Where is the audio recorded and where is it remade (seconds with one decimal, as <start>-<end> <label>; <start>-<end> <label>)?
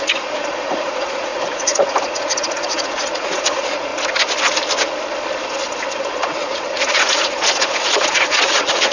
0.0-3.9 remade; 3.9-6.0 recorded; 6.0-8.9 remade